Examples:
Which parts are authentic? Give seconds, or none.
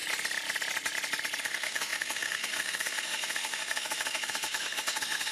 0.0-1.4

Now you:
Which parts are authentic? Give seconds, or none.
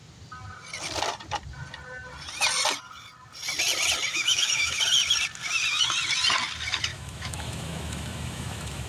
0.0-4.1; 4.8-6.9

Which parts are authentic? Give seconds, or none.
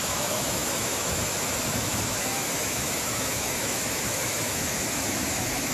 none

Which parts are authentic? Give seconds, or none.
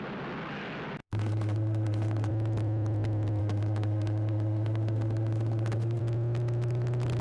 0.0-1.0; 2.3-3.4; 6.0-7.2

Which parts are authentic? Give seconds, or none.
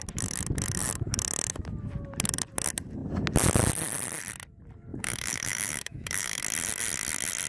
0.0-4.9; 6.4-7.5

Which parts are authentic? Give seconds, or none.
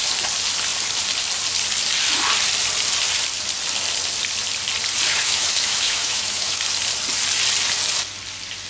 0.0-5.1; 6.6-8.7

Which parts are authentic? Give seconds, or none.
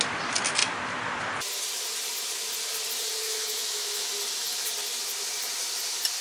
0.0-3.2; 4.1-6.2